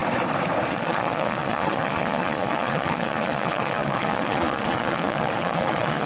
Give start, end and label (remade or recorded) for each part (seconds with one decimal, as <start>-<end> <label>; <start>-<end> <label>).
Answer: 0.0-0.7 recorded; 0.7-6.1 remade